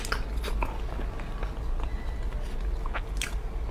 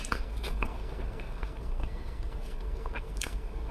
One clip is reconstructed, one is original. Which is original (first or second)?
first